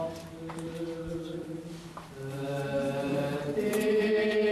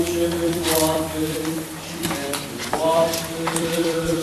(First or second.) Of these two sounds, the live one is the first